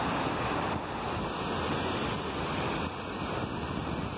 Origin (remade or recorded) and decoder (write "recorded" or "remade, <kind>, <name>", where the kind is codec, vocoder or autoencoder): recorded